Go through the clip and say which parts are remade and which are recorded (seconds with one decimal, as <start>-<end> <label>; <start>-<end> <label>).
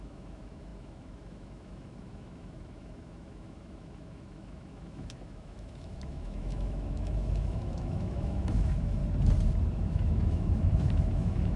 0.0-9.0 remade; 9.0-9.7 recorded; 9.7-11.6 remade